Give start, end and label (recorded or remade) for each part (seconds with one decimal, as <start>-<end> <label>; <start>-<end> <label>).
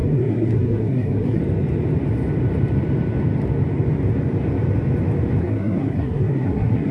0.0-1.4 remade; 1.4-5.4 recorded; 5.4-6.9 remade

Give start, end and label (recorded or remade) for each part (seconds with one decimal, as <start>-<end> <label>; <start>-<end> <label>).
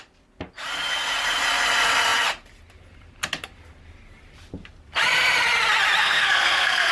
0.0-6.0 recorded; 6.0-6.9 remade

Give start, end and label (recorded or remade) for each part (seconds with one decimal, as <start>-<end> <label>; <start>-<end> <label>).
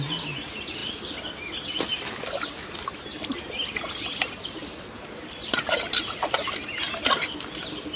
0.0-8.0 recorded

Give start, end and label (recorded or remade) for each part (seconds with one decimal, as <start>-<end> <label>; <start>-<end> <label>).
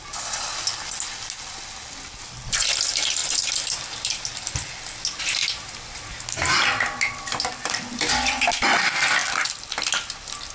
0.0-10.5 recorded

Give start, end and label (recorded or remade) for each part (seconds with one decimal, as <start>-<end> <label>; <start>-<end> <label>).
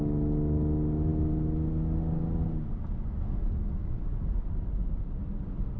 0.0-5.8 recorded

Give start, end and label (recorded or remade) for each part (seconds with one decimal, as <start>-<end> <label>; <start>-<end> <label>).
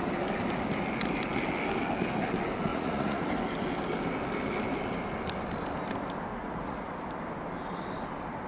0.0-2.7 recorded; 2.7-3.3 remade; 3.3-6.3 recorded; 6.3-6.9 remade; 6.9-8.5 recorded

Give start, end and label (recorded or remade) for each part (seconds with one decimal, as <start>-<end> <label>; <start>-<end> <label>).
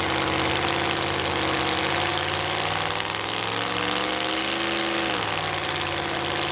0.0-6.5 recorded